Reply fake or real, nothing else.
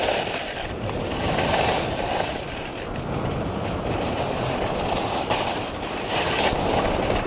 fake